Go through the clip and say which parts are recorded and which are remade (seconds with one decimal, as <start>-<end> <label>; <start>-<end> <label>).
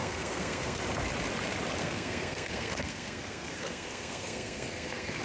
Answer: 0.0-0.8 remade; 0.8-1.8 recorded; 1.8-5.2 remade